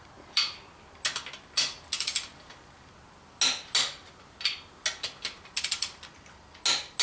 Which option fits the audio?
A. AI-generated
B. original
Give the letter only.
B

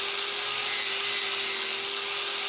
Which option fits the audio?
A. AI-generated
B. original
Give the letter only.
B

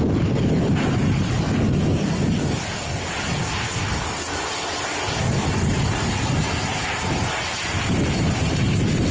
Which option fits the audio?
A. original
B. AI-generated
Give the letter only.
A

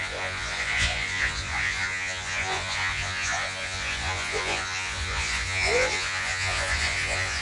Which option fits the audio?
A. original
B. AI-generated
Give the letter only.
B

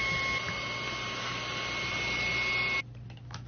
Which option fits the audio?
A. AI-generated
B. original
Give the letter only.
B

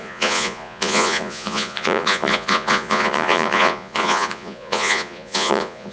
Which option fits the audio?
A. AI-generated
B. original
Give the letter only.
A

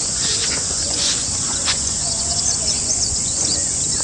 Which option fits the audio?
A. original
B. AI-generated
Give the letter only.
B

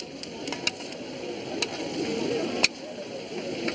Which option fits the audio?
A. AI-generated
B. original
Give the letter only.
B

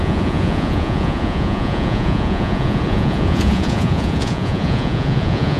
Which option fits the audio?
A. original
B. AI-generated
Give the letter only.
B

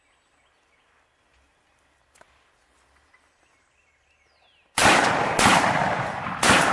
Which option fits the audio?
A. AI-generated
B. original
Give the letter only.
B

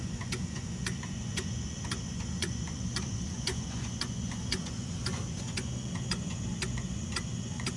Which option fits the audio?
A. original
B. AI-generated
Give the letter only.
B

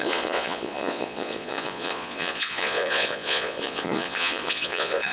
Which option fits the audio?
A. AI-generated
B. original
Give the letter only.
A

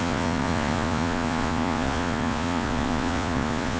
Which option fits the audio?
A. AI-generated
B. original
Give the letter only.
A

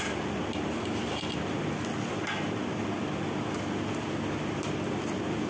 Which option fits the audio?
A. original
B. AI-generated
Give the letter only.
A